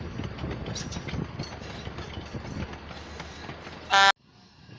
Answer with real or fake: real